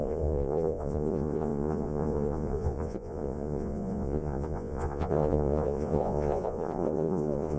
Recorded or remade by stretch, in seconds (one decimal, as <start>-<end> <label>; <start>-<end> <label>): 0.0-7.6 remade